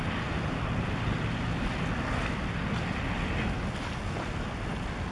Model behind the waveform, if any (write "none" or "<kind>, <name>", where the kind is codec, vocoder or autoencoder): none